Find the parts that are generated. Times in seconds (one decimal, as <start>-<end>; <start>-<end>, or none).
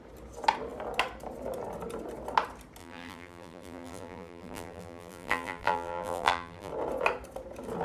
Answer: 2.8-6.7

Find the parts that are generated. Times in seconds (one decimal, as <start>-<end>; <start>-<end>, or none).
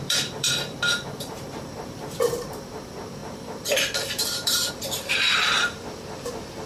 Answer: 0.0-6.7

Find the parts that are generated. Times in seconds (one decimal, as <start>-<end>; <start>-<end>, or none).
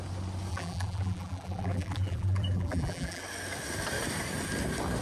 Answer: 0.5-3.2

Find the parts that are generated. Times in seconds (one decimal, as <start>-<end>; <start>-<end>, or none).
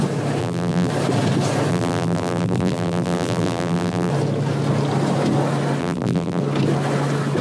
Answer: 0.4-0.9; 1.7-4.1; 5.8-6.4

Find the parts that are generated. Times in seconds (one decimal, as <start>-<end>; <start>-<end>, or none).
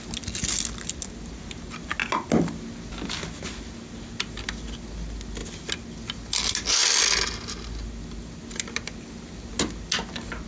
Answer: none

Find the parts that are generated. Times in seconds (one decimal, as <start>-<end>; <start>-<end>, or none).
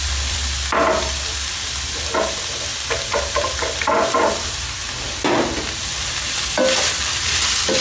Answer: 0.0-2.7; 6.2-7.8